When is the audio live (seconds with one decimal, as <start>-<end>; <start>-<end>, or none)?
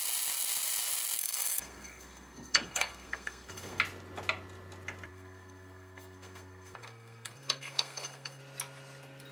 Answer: 0.0-1.2; 3.8-5.1; 8.4-9.3